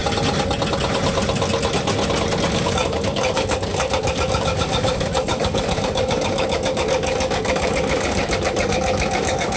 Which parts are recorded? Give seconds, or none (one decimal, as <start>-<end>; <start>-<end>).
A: 0.0-2.5